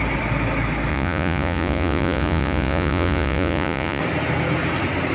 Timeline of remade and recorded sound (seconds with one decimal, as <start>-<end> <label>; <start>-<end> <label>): 0.0-0.9 recorded; 0.9-4.0 remade; 4.0-5.1 recorded